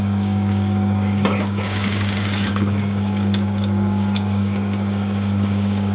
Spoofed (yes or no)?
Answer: yes